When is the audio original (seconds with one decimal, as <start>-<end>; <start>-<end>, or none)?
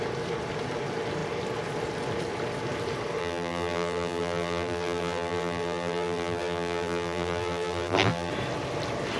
0.0-3.2; 8.3-9.2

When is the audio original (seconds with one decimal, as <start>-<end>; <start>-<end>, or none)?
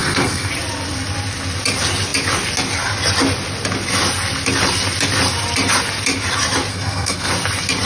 0.5-6.7; 7.3-7.8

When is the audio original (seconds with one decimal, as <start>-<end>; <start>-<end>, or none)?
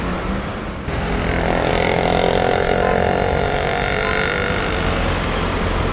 0.0-5.9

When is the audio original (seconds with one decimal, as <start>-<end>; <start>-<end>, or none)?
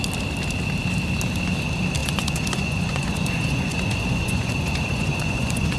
0.0-2.0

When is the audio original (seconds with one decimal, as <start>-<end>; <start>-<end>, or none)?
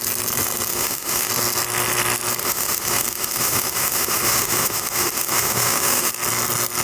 0.0-0.7; 1.3-2.4; 6.1-6.8